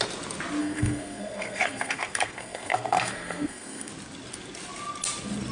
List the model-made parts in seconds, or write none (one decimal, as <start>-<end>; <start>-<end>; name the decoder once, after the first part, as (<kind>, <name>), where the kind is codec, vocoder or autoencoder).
0.6-3.9 (codec, SNAC)